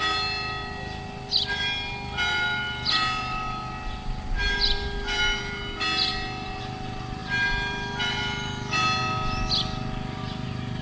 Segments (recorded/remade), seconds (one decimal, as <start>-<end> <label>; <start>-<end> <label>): 0.0-10.8 recorded